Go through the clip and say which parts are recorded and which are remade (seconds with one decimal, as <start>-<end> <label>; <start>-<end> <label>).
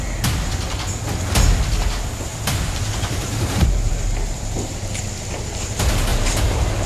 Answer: 0.0-2.3 recorded; 2.3-3.9 remade; 3.9-6.1 recorded; 6.1-6.9 remade